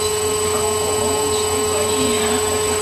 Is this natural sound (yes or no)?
yes